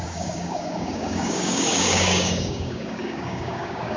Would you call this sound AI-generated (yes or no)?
yes